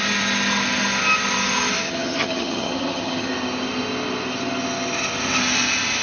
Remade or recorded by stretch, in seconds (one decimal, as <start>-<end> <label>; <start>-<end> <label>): 0.0-1.8 recorded; 1.8-3.3 remade; 3.3-6.0 recorded